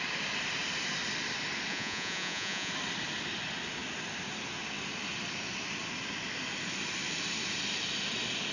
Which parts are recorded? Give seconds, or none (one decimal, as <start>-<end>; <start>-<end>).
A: 0.0-1.7; 2.7-8.5